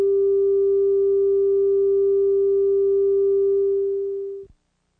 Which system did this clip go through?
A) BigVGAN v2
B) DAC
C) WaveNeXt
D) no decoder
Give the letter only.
D